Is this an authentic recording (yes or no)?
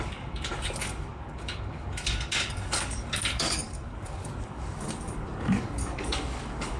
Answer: no